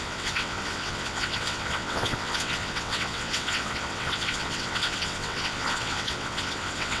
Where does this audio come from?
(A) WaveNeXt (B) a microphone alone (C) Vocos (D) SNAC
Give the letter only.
A